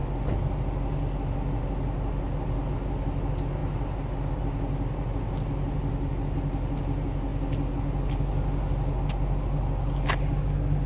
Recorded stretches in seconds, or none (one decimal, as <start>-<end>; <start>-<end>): 0.0-10.9